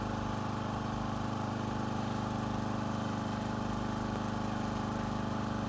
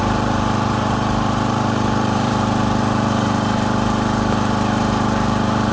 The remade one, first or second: second